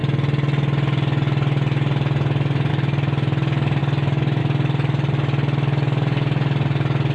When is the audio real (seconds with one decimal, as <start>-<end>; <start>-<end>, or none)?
0.0-7.1